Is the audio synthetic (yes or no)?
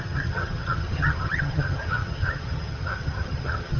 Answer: yes